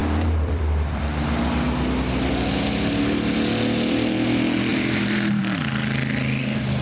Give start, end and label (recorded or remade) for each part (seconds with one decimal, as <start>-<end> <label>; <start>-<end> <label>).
0.0-1.0 remade; 1.0-4.7 recorded; 4.7-5.4 remade; 5.4-6.8 recorded